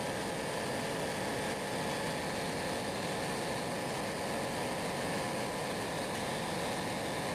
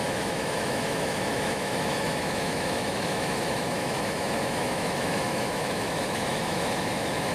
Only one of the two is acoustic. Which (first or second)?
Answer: first